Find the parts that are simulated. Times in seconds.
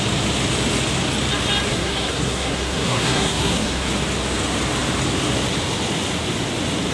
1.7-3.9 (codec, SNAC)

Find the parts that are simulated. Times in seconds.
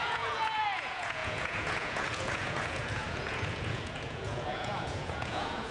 0.0-5.7 (vocoder, Vocos)